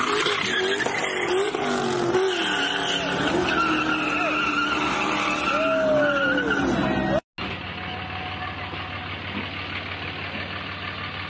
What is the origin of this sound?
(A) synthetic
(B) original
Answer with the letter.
B